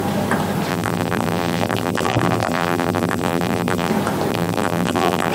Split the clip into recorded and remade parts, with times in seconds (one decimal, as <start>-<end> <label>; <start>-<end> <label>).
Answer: 0.0-0.7 recorded; 0.7-3.9 remade; 3.9-4.3 recorded; 4.3-5.3 remade